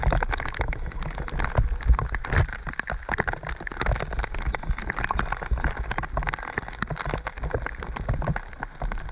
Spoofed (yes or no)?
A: no